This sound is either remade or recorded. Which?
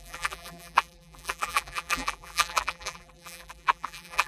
remade